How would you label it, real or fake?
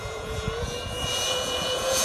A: fake